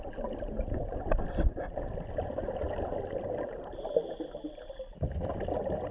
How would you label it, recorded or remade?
recorded